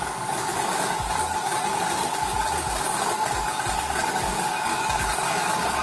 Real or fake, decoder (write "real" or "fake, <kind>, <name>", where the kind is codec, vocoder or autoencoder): fake, codec, DAC